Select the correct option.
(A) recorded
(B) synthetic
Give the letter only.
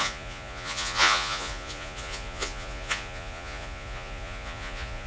B